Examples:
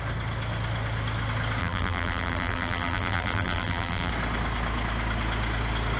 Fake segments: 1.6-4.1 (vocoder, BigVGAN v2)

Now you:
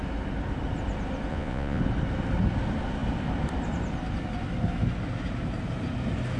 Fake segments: 1.3-1.8 (vocoder, Vocos)

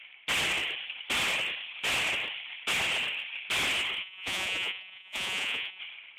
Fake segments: 4.0-5.8 (vocoder, Vocos)

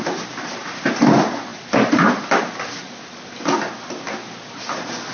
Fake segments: none

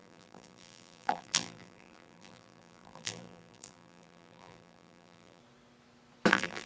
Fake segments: 0.0-5.4 (vocoder, BigVGAN v2); 6.3-6.7